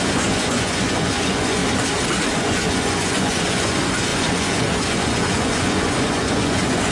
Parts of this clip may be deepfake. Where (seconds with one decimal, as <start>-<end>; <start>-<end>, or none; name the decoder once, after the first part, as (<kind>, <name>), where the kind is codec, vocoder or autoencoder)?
0.0-1.6 (vocoder, Vocos); 2.2-6.9